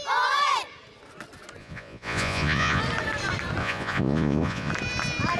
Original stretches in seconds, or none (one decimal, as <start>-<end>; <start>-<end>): 0.0-1.6; 2.8-3.6; 4.7-5.4